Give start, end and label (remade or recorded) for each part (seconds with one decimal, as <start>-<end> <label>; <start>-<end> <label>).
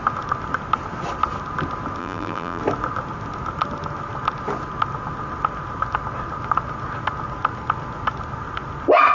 0.0-2.0 recorded; 2.0-2.6 remade; 2.6-9.1 recorded